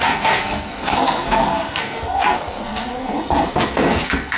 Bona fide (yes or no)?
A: no